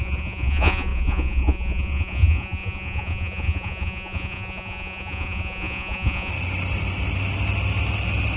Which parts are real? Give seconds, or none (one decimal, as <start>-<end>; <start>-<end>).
6.3-8.4